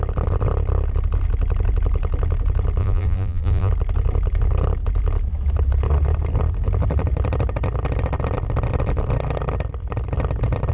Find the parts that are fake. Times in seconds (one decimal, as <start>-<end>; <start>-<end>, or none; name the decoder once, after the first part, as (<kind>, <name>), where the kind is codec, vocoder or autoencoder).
2.8-3.7 (vocoder, BigVGAN v2)